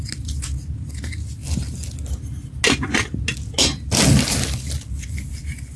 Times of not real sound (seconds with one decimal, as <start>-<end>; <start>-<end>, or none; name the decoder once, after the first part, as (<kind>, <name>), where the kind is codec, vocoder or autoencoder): none